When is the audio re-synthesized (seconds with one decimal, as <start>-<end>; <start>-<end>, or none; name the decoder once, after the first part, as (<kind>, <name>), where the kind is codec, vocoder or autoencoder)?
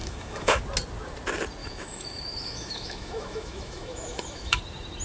0.0-0.6 (autoencoder, DAC-VAE); 1.6-4.6